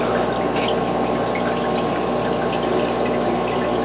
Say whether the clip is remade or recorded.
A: recorded